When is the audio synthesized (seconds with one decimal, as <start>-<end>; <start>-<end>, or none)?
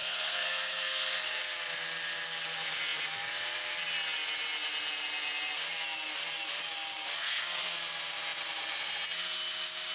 0.0-1.4